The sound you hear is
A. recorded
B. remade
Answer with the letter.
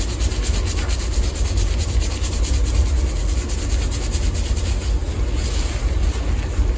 A